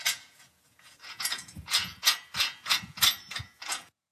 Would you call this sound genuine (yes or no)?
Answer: no